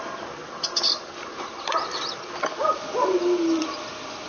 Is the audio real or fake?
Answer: real